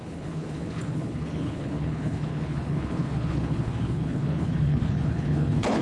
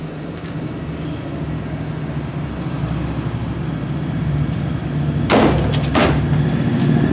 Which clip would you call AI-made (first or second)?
first